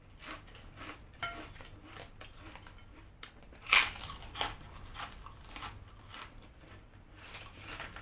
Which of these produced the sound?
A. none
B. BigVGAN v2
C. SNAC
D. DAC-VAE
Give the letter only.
A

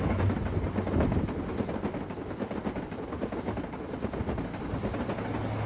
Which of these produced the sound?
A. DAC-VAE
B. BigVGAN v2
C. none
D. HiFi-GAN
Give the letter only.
C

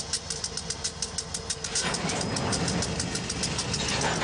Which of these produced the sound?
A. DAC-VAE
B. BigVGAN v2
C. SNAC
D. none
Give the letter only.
D